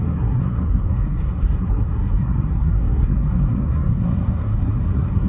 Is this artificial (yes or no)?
yes